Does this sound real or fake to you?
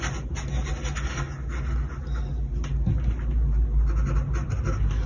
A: real